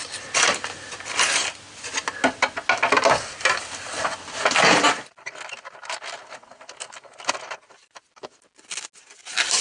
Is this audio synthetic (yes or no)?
no